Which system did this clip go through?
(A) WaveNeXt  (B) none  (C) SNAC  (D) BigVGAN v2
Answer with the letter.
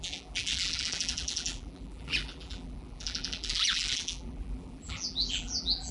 D